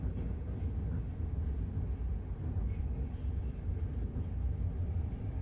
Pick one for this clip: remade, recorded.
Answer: recorded